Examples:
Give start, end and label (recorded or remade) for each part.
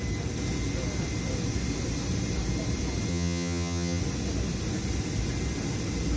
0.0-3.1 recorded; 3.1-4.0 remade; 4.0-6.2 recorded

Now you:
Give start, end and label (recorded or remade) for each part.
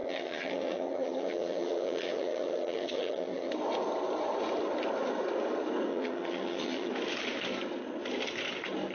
0.0-3.5 remade; 3.5-5.9 recorded; 5.9-6.9 remade; 6.9-8.9 recorded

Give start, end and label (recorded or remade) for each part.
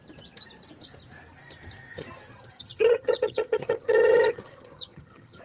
0.0-1.9 recorded; 1.9-5.4 remade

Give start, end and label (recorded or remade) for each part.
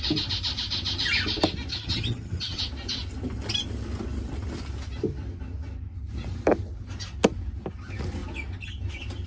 0.0-1.7 recorded; 1.7-2.6 remade; 2.6-9.3 recorded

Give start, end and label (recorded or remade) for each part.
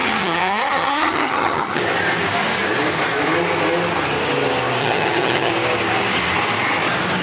0.0-1.8 remade; 1.8-4.8 recorded; 4.8-5.5 remade; 5.5-7.2 recorded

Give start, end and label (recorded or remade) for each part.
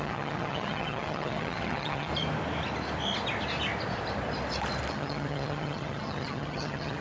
0.0-2.1 remade; 2.1-4.9 recorded; 4.9-7.0 remade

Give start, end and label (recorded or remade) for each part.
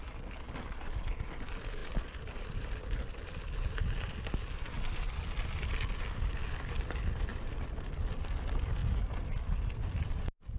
0.0-10.6 recorded